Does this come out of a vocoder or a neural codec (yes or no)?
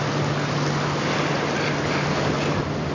no